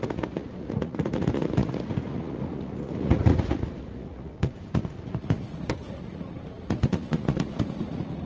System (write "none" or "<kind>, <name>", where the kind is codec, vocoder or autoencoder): vocoder, Vocos